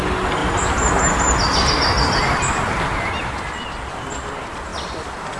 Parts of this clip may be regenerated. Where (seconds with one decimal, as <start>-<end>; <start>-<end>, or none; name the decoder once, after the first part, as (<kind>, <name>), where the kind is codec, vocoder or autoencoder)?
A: none